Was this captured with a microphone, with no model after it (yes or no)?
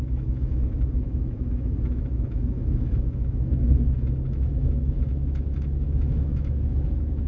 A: no